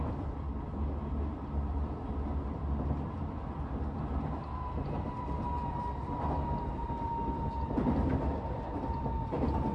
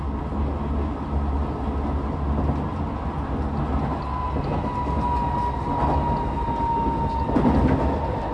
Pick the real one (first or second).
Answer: second